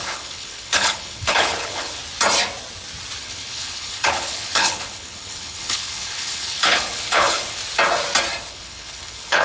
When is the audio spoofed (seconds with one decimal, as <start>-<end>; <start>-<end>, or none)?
0.0-2.0; 3.2-7.6; 8.5-9.4